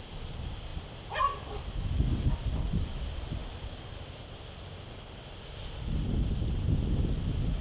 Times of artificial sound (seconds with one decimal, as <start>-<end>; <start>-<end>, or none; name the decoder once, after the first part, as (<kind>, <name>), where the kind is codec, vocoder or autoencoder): none